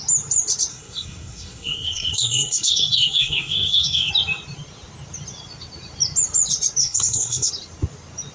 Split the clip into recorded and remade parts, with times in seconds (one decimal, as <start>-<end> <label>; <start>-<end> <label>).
0.0-0.7 recorded; 0.7-4.1 remade; 4.1-6.8 recorded; 6.8-7.5 remade; 7.5-8.3 recorded